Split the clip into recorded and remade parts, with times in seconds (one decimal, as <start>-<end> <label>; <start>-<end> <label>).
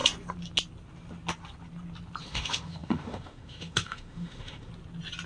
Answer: 0.0-2.2 recorded; 2.2-4.7 remade; 4.7-5.3 recorded